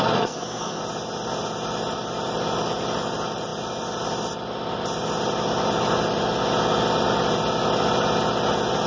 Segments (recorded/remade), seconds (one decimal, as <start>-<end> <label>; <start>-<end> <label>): 0.0-0.8 remade; 0.8-8.9 recorded